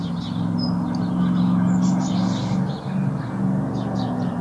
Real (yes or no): yes